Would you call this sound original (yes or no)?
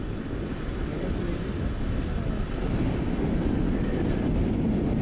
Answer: yes